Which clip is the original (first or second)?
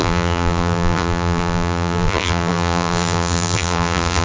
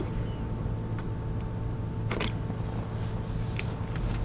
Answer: second